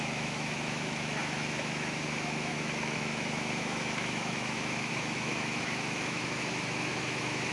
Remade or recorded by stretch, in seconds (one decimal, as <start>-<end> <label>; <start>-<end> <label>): 0.0-7.5 remade